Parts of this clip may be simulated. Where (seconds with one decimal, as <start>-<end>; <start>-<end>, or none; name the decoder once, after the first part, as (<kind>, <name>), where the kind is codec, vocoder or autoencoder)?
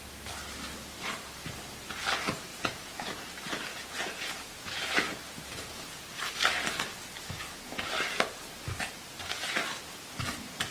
2.5-3.1 (vocoder, Vocos); 3.7-6.1